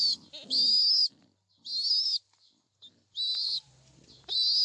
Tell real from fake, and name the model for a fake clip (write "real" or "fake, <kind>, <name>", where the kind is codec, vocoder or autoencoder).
real